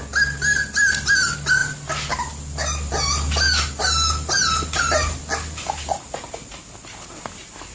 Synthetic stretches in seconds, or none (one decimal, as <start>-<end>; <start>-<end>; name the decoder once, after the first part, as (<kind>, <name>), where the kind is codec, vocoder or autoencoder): none